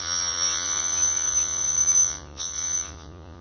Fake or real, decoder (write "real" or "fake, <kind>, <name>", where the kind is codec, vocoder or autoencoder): fake, vocoder, Vocos